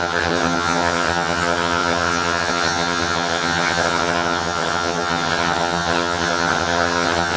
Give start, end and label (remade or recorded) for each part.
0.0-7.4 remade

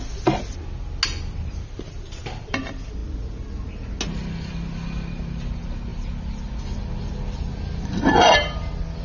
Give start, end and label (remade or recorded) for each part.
0.0-9.0 recorded

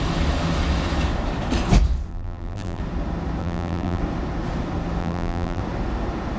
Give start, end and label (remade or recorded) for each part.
0.0-2.1 recorded; 2.1-2.8 remade; 2.8-3.4 recorded; 3.4-4.0 remade; 4.0-5.0 recorded; 5.0-5.6 remade; 5.6-6.4 recorded

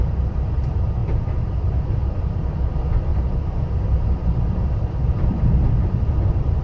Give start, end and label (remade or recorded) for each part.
0.0-1.0 recorded; 1.0-2.7 remade; 2.7-3.1 recorded; 3.1-6.6 remade

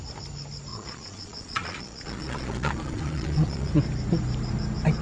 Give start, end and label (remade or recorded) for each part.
0.0-0.7 recorded; 0.7-3.7 remade; 3.7-5.0 recorded

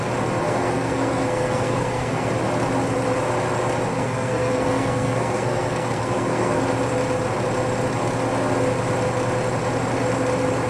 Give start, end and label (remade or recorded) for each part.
0.0-0.4 recorded; 0.4-2.3 remade; 2.3-3.9 recorded; 3.9-6.6 remade; 6.6-10.7 recorded

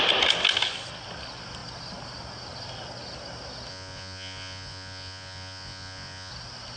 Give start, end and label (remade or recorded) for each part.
0.0-3.7 recorded; 3.7-6.3 remade; 6.3-6.8 recorded